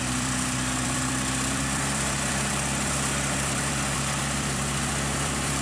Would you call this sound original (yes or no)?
no